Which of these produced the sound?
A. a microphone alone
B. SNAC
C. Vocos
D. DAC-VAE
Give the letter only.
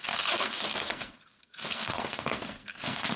B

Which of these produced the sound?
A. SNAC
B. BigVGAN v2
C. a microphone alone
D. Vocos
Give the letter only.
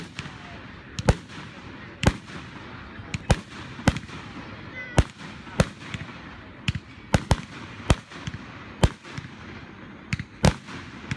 C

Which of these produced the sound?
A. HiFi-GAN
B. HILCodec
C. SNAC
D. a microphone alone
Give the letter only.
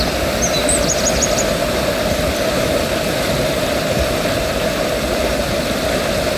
D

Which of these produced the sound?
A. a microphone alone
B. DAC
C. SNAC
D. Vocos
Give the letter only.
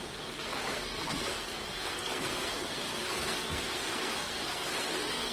C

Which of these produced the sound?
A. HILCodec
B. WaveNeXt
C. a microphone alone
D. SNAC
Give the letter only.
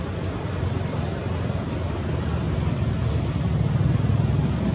C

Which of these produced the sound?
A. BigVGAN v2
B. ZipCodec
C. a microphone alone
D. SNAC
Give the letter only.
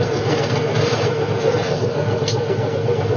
D